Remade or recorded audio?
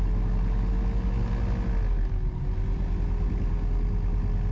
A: recorded